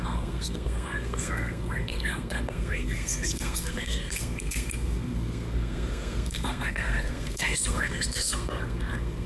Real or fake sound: fake